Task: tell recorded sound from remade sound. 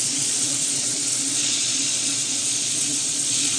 remade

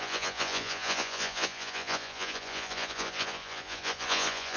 remade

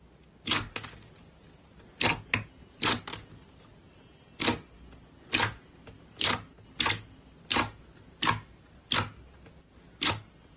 recorded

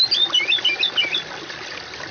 recorded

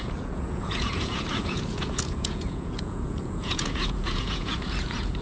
remade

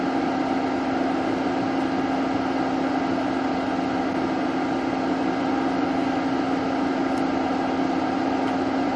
recorded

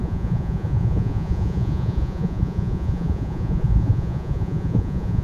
remade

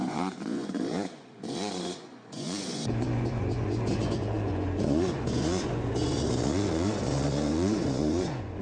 remade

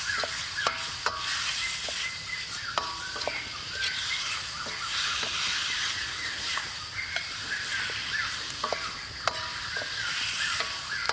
recorded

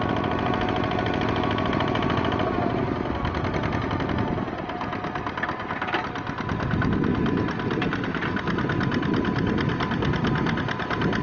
recorded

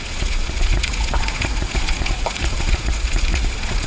remade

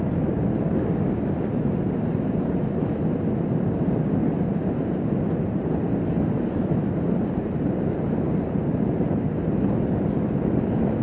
recorded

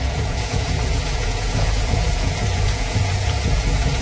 remade